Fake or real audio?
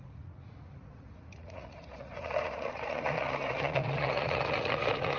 fake